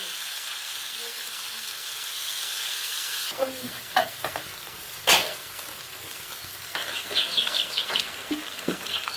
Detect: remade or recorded remade